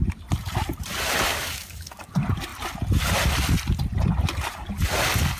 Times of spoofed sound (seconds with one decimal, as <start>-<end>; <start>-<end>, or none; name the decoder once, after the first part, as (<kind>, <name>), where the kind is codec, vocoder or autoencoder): 1.3-2.1 (codec, DAC)